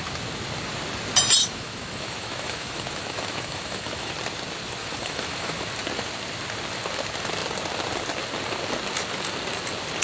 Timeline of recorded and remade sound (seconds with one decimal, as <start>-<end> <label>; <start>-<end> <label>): 0.0-1.4 recorded; 1.4-4.1 remade; 4.1-4.8 recorded; 4.8-5.6 remade; 5.6-10.0 recorded